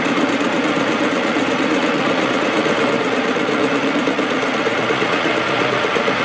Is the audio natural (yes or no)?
no